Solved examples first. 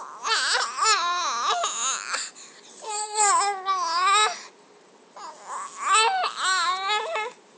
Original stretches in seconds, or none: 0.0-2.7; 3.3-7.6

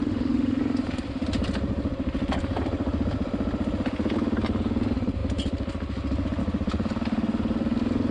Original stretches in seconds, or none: 0.6-8.1